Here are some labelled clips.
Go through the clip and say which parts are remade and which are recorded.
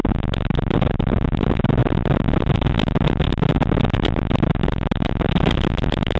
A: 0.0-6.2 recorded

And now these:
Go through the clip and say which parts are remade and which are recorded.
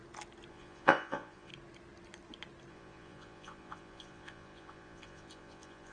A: 0.0-0.5 recorded; 0.5-1.5 remade; 1.5-2.7 recorded; 2.7-5.9 remade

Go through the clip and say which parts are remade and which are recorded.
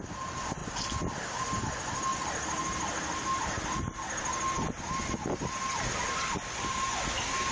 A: 0.0-7.5 recorded